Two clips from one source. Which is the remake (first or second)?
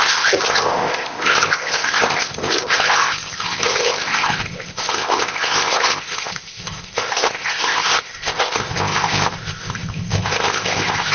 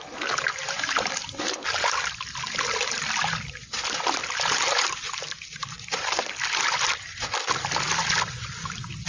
first